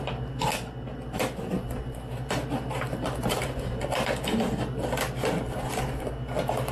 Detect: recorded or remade recorded